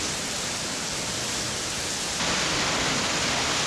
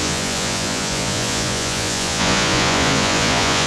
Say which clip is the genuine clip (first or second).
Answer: first